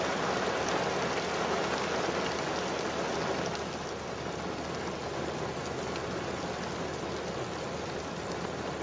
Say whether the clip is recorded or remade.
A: recorded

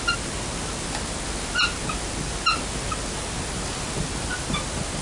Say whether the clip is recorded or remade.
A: recorded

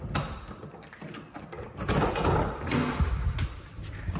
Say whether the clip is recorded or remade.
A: recorded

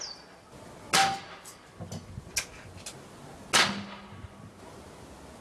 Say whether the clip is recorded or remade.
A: recorded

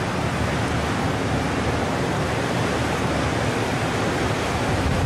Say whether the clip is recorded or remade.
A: recorded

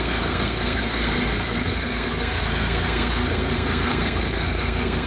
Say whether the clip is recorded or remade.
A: remade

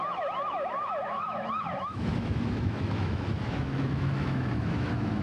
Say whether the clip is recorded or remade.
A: remade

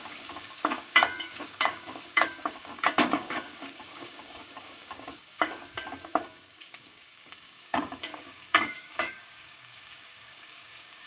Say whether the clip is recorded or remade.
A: remade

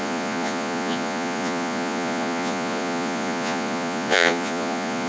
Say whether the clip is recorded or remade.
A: remade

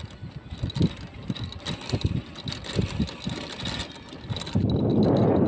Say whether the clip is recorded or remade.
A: recorded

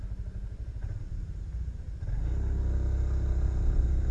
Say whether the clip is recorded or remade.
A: recorded